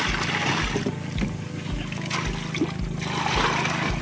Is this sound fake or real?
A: real